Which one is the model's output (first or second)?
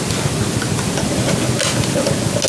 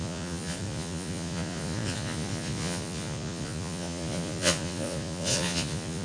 second